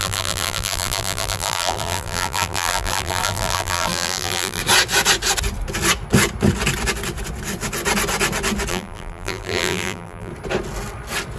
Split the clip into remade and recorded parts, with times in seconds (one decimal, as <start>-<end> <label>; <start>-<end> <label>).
0.0-4.6 remade; 4.6-8.7 recorded; 8.7-10.3 remade; 10.3-11.4 recorded